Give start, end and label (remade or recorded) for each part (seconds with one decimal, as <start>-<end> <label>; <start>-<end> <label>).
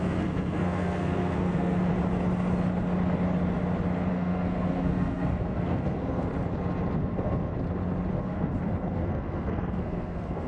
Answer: 0.0-1.9 remade; 1.9-4.1 recorded; 4.1-6.3 remade; 6.3-7.0 recorded; 7.0-7.5 remade; 7.5-8.1 recorded; 8.1-10.5 remade